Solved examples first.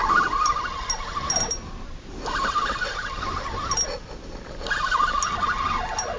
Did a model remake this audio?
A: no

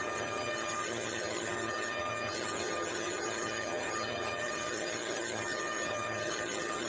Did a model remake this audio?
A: yes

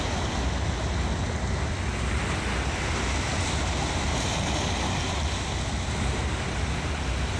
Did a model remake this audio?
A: no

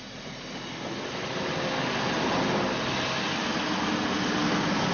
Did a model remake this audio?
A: no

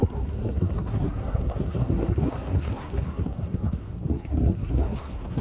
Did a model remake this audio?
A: yes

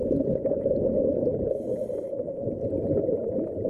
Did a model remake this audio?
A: no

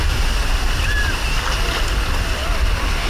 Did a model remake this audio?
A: no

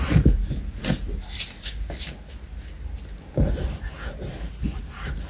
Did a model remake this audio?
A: no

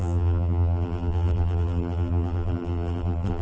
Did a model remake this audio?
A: yes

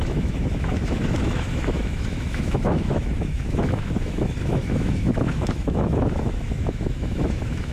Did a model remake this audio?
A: yes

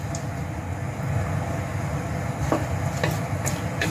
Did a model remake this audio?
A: no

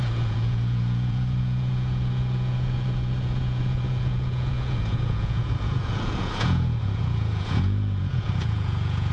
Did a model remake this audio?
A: yes